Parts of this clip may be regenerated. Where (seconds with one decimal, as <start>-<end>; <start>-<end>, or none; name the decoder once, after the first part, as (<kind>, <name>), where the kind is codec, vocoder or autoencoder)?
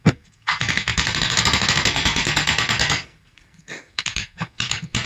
0.0-5.1 (codec, SNAC)